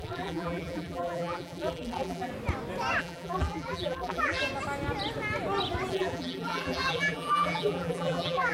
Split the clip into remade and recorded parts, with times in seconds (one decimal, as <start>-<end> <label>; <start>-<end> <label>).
0.0-2.3 remade; 2.3-3.0 recorded; 3.0-4.4 remade; 4.4-5.9 recorded; 5.9-8.5 remade